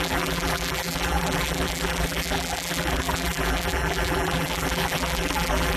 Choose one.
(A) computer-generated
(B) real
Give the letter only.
A